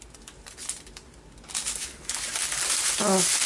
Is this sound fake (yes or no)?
no